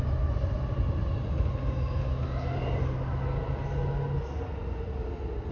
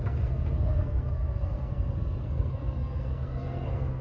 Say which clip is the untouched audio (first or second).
first